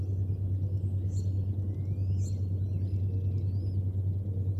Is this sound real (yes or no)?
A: yes